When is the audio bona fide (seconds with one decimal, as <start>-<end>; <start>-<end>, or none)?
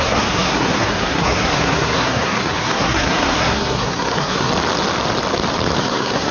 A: 4.5-5.8